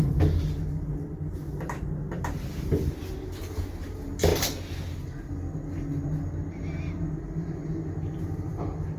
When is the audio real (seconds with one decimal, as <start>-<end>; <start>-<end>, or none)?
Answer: 0.0-9.0